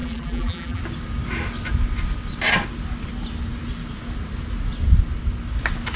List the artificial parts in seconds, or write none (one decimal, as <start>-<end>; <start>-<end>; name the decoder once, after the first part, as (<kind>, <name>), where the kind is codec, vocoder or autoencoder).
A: 0.0-0.8 (vocoder, BigVGAN v2)